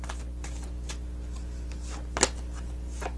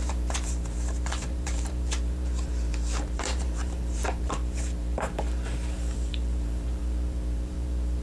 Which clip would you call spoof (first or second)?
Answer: second